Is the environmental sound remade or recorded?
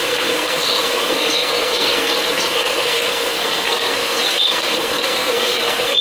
remade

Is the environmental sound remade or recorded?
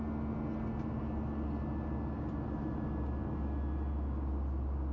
recorded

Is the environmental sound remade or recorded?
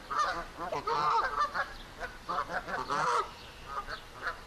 recorded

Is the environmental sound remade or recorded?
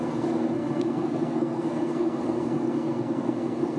remade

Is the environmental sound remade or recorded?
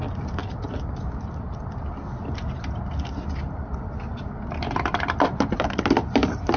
recorded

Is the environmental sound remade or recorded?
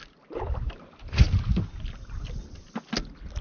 recorded